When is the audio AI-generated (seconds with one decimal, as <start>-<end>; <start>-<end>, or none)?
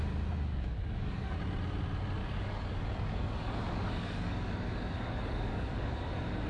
0.5-1.4; 2.2-6.1